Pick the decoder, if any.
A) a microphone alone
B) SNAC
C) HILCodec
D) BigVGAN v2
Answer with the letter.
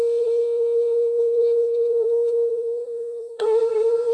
B